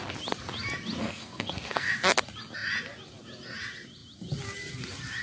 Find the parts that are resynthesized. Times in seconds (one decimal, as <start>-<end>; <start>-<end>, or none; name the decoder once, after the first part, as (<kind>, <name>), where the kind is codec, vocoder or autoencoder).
1.0-1.9 (codec, SNAC)